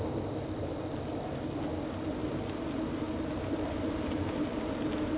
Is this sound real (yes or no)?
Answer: yes